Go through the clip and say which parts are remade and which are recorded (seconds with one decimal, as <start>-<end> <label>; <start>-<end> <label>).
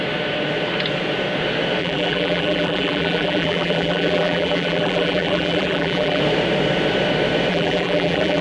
0.0-1.8 recorded; 1.8-6.2 remade; 6.2-7.5 recorded; 7.5-8.4 remade